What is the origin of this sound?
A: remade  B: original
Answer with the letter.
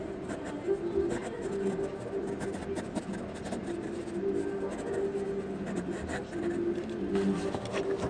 B